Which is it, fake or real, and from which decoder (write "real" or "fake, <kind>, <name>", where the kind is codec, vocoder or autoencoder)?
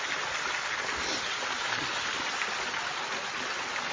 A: real